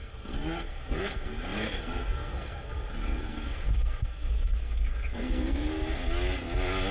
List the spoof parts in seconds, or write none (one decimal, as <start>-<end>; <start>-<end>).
0.0-6.0